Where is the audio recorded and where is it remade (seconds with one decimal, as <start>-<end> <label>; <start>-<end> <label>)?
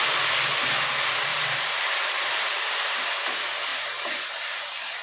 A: 0.0-1.3 recorded; 1.3-3.2 remade; 3.2-5.0 recorded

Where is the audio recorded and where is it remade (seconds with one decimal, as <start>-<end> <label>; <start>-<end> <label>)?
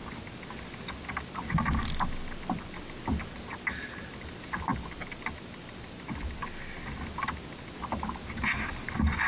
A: 0.0-9.3 recorded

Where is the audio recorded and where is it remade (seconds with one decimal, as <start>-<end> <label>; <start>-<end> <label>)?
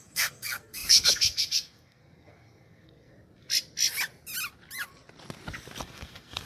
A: 0.0-3.1 remade; 3.1-5.8 recorded; 5.8-6.5 remade